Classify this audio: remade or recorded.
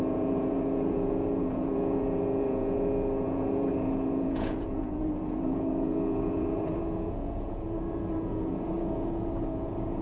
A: remade